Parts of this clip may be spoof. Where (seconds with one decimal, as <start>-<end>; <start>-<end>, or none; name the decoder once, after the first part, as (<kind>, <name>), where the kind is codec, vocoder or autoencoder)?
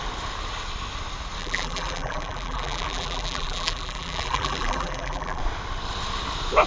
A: 1.4-5.4 (vocoder, BigVGAN v2)